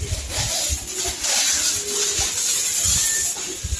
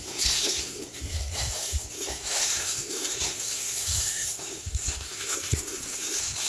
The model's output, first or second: second